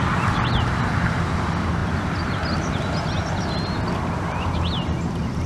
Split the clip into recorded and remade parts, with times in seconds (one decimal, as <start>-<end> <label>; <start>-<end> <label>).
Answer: 0.0-1.8 remade; 1.8-5.1 recorded; 5.1-5.5 remade